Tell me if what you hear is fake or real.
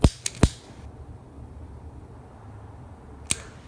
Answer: real